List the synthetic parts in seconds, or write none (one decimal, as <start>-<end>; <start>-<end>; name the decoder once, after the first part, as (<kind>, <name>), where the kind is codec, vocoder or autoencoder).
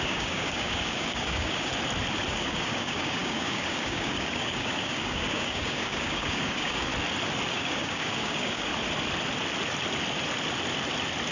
0.0-1.7 (codec, DAC); 2.3-6.9; 7.5-8.7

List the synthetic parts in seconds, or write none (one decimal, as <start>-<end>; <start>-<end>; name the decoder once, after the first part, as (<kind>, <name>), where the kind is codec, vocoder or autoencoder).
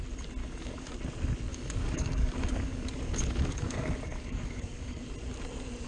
0.4-0.9 (codec, DAC); 1.5-5.0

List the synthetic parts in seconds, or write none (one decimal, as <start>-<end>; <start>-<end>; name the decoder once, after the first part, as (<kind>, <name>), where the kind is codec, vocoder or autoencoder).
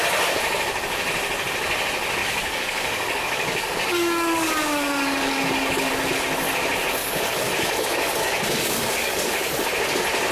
2.2-5.9 (codec, DAC); 7.0-9.3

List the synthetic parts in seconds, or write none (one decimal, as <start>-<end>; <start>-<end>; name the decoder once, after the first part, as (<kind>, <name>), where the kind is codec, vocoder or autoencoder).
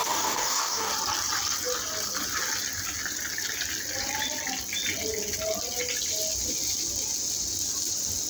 0.0-0.9 (codec, DAC)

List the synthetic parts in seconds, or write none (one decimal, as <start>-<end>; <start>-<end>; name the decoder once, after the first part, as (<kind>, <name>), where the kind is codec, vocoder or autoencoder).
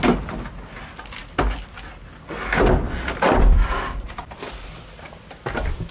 none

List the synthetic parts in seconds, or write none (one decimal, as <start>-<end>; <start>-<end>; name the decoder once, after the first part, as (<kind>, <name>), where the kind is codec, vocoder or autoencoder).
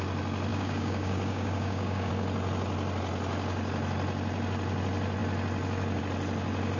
0.5-2.1 (codec, DAC)